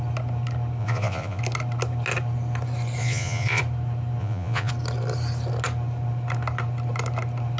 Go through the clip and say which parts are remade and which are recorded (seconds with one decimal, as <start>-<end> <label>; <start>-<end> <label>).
0.0-0.8 recorded; 0.8-1.4 remade; 1.4-3.0 recorded; 3.0-3.6 remade; 3.6-4.2 recorded; 4.2-4.7 remade; 4.7-7.6 recorded